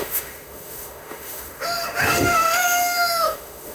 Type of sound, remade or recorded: remade